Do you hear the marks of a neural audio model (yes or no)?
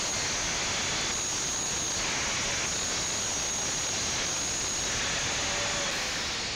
no